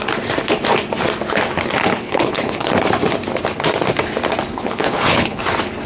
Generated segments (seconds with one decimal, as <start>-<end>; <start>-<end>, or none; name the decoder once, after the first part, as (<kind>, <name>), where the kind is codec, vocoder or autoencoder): 1.9-2.7 (codec, HILCodec); 4.5-5.4